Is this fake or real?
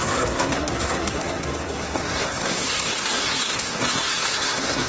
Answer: fake